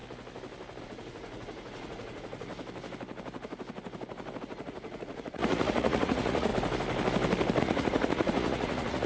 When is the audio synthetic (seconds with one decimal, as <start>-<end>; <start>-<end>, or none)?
0.8-2.5; 4.4-6.5; 7.6-9.1